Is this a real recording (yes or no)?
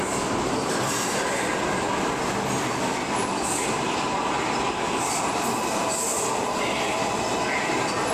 yes